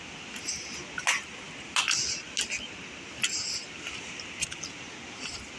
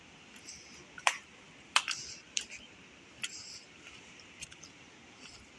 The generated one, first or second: second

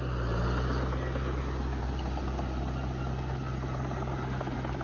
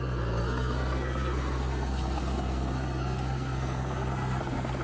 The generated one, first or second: second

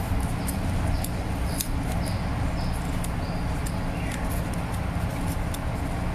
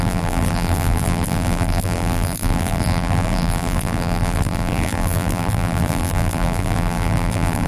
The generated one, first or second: second